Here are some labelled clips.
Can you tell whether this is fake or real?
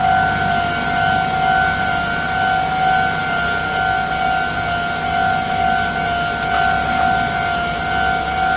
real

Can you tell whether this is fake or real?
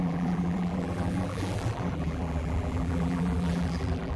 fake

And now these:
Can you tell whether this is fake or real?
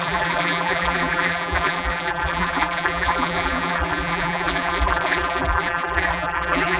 fake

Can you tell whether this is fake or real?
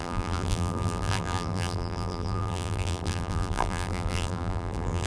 fake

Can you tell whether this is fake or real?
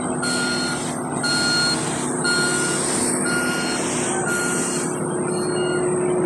real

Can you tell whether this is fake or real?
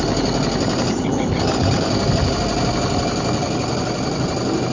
real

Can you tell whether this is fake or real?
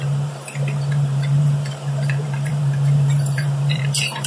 fake